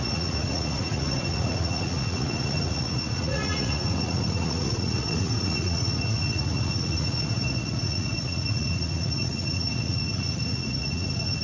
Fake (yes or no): yes